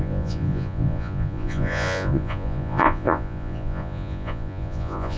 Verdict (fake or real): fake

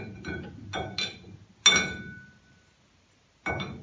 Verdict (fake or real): real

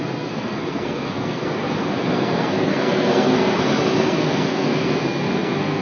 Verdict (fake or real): fake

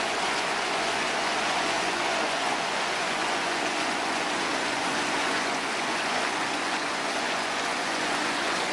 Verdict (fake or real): fake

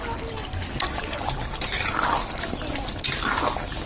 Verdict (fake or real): real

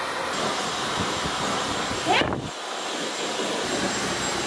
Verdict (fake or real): real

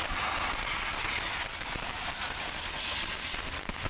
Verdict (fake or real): real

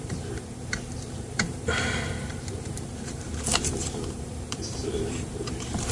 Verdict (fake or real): fake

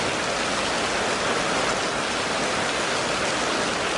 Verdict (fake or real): real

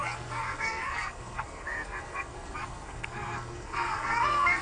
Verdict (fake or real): fake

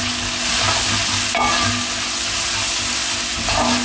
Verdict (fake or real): real